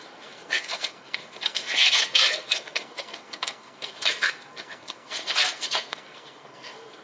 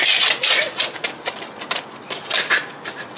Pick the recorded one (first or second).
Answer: second